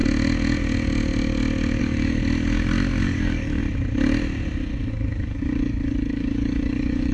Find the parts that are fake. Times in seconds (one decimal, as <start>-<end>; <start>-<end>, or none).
1.8-2.2; 3.0-3.6; 4.9-7.1